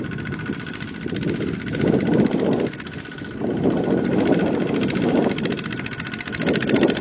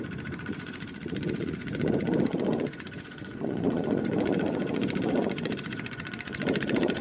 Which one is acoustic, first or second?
first